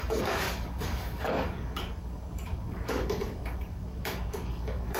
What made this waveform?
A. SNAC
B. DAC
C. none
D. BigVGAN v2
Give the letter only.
B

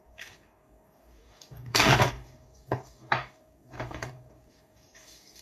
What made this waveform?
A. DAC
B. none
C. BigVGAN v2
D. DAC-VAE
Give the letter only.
A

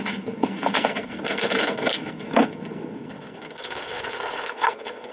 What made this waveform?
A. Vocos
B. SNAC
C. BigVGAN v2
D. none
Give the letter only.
B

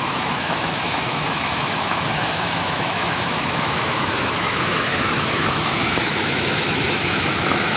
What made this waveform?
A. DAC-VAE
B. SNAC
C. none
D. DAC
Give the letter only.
A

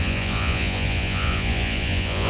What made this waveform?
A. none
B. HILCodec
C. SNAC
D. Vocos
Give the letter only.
D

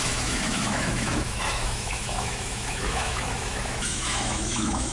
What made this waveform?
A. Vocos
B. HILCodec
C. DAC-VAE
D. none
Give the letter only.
C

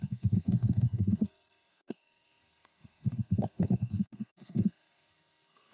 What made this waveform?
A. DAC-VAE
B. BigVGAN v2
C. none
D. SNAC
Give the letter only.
D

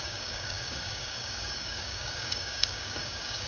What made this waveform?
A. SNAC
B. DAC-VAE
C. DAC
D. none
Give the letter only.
C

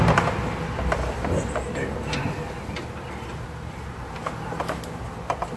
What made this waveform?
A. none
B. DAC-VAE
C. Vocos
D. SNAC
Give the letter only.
A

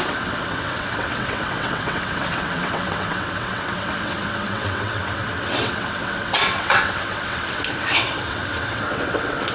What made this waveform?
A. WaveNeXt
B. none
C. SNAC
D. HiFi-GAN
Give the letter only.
A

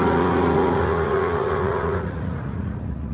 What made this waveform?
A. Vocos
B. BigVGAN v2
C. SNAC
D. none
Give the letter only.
A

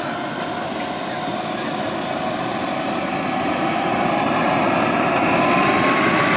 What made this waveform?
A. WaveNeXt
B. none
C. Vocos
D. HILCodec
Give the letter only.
B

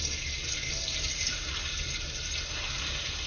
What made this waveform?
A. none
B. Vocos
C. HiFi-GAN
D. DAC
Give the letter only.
A